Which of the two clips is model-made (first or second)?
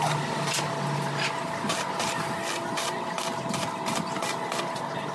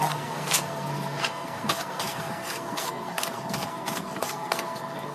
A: second